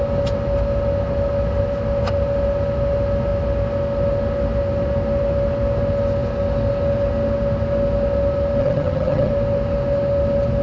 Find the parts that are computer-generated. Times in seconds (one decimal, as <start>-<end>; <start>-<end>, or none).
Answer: 8.6-9.3